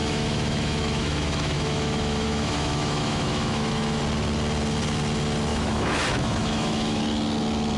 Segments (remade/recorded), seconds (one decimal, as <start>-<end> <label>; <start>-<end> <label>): 0.0-4.0 remade; 4.0-5.5 recorded; 5.5-7.0 remade; 7.0-7.8 recorded